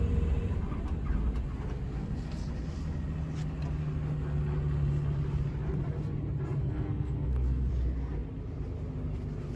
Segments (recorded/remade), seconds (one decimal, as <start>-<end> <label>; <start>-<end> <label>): 0.0-6.6 recorded; 6.6-7.7 remade; 7.7-9.6 recorded

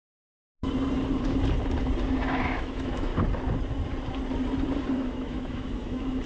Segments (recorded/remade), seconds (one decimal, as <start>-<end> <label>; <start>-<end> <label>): 0.0-2.4 recorded; 2.4-3.1 remade; 3.1-5.0 recorded; 5.0-6.3 remade

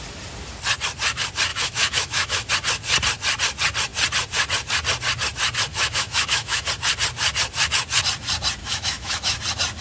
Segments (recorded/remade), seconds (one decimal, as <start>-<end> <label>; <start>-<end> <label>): 0.0-1.5 recorded; 1.5-2.5 remade; 2.5-5.7 recorded; 5.7-6.7 remade; 6.7-8.6 recorded; 8.6-9.4 remade; 9.4-9.8 recorded

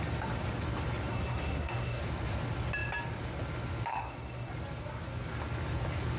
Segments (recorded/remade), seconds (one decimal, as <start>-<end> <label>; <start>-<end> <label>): 0.0-1.1 recorded; 1.1-2.0 remade; 2.0-3.9 recorded; 3.9-4.5 remade; 4.5-6.2 recorded

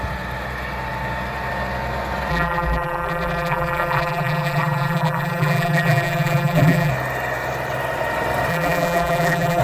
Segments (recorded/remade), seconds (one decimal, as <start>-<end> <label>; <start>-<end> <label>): 0.0-2.3 recorded; 2.3-6.9 remade; 6.9-8.5 recorded; 8.5-9.6 remade

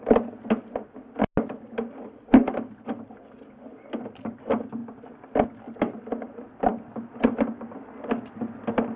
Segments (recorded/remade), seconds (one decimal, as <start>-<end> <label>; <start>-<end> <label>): 0.0-9.0 recorded

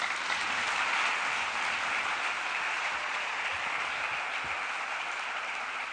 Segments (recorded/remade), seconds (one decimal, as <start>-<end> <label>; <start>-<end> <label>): 0.0-2.8 recorded; 2.8-3.5 remade; 3.5-5.9 recorded